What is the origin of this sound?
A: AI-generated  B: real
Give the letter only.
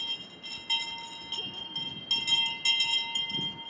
B